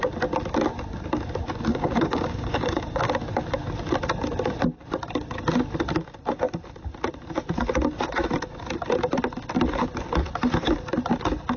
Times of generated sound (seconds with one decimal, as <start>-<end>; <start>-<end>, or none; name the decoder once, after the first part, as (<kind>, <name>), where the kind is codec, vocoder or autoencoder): 1.7-3.1 (codec, DAC)

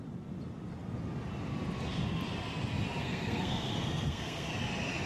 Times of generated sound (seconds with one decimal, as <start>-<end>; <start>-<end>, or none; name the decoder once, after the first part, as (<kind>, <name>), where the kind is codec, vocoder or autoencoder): 3.0-4.5 (codec, SNAC)